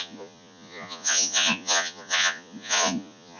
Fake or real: fake